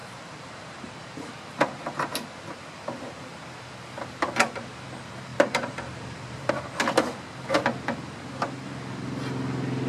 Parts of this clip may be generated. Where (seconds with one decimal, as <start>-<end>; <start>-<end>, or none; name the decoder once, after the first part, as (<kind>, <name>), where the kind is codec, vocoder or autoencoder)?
0.0-1.3 (vocoder, BigVGAN v2); 5.3-6.5